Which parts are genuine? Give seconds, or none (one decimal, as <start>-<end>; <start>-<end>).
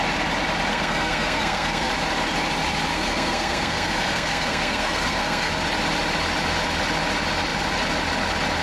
0.0-0.7; 1.9-2.9; 5.5-8.6